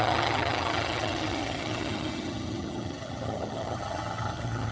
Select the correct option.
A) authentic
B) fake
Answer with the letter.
B